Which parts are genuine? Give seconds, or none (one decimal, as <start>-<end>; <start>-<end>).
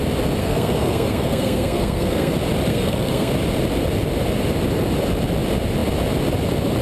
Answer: 0.0-0.4; 2.3-2.7; 3.3-6.8